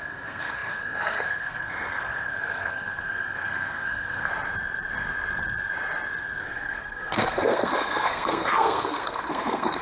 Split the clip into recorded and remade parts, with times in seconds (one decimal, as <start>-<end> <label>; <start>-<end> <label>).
0.0-4.3 remade; 4.3-6.4 recorded; 6.4-9.8 remade